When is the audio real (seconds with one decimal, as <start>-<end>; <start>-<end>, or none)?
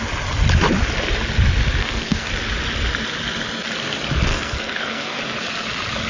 0.0-1.8; 2.3-4.3; 5.2-6.1